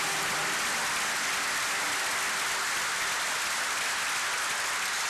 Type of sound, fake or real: real